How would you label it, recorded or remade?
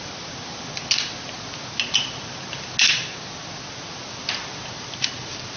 recorded